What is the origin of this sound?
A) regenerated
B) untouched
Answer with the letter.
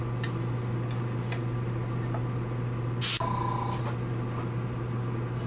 B